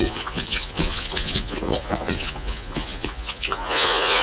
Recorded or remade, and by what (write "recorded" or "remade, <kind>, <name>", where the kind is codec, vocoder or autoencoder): remade, vocoder, Vocos